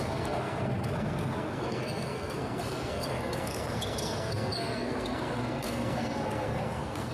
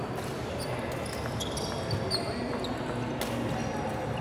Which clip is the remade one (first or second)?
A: first